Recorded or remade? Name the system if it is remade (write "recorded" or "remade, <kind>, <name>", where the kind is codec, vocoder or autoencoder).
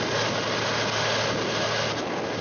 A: recorded